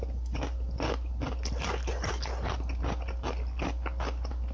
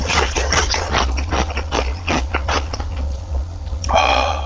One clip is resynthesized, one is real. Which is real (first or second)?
first